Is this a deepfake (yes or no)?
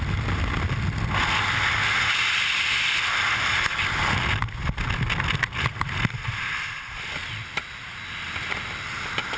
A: no